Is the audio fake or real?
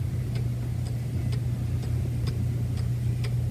real